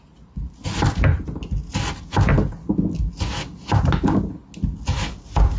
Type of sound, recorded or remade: recorded